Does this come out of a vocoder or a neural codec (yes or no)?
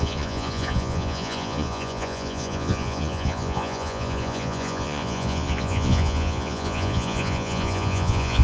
yes